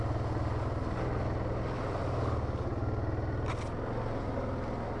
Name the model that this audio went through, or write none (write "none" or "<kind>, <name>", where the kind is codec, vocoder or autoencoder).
none